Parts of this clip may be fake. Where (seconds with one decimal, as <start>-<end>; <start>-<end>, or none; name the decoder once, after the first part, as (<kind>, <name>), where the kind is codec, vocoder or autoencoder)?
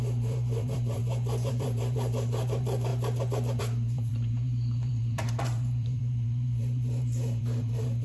0.0-1.0 (vocoder, BigVGAN v2); 1.5-2.9; 3.6-8.0